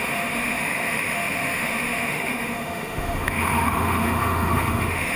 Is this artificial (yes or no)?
yes